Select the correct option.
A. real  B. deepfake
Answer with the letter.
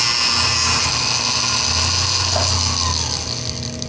A